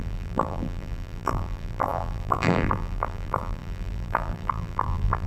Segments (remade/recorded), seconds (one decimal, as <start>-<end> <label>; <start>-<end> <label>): 0.0-5.3 remade